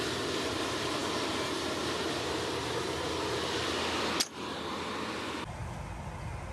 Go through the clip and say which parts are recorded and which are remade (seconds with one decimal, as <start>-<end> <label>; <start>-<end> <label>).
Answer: 0.0-6.5 recorded